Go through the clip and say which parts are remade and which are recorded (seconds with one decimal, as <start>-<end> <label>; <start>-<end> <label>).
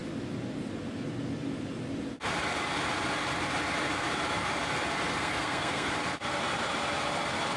0.0-5.2 recorded; 5.2-5.9 remade; 5.9-7.6 recorded